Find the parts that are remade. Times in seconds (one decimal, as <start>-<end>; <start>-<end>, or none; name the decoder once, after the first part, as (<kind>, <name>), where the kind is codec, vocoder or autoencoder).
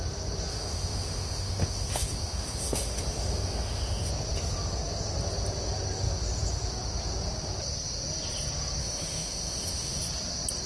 0.5-4.1 (autoencoder, DAC-VAE); 8.8-10.0